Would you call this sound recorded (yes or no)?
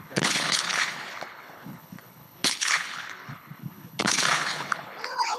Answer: no